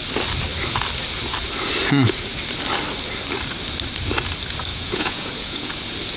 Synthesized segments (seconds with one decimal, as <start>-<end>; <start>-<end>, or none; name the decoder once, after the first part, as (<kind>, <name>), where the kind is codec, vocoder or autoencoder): 4.7-5.7 (vocoder, Vocos)

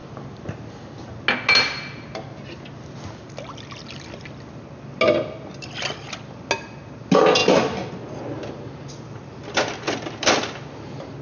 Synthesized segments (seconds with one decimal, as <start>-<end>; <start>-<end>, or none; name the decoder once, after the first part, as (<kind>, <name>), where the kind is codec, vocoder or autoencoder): none